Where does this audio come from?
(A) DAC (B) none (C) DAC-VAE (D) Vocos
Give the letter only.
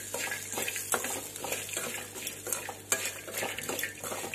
B